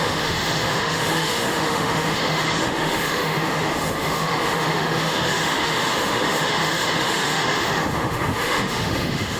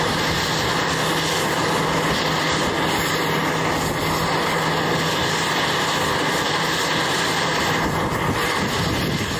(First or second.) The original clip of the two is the second